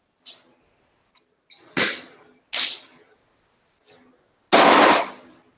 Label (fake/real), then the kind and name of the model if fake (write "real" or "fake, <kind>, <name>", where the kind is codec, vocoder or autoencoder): real